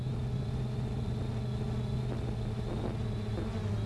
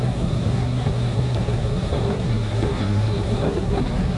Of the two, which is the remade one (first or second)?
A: second